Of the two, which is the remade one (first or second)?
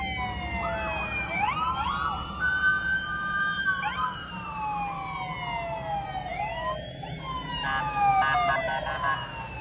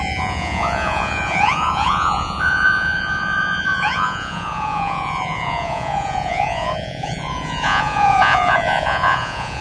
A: second